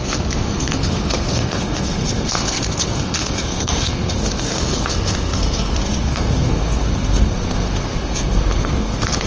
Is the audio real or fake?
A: fake